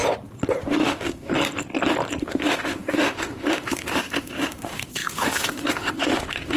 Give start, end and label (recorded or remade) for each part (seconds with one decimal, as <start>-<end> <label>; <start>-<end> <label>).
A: 0.0-0.6 recorded; 0.6-1.3 remade; 1.3-2.2 recorded; 2.2-6.6 remade